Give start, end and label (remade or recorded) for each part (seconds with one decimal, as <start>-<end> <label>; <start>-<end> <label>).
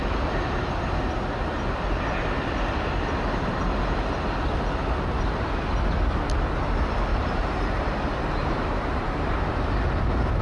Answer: 0.0-7.1 recorded; 7.1-9.9 remade; 9.9-10.4 recorded